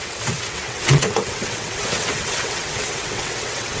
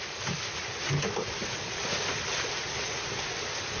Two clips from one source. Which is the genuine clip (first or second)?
second